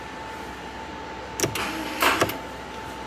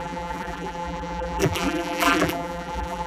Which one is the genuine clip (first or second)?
first